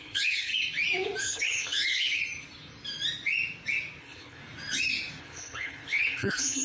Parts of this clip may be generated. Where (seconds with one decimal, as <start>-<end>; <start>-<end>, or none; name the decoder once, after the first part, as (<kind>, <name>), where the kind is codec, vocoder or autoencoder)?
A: 0.0-0.5 (codec, HILCodec); 1.2-2.2; 4.0-4.4; 5.2-6.6